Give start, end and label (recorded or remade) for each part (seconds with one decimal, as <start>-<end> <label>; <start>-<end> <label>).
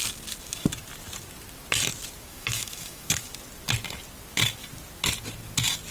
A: 0.0-2.3 recorded; 2.3-3.3 remade; 3.3-5.9 recorded